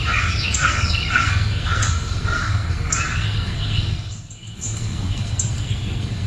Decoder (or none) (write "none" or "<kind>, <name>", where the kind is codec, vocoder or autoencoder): codec, SNAC